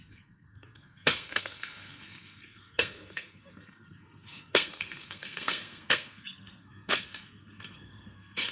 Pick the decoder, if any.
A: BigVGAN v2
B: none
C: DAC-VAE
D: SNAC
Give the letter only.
D